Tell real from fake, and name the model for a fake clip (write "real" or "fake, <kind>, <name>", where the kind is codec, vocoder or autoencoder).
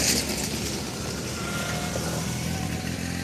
real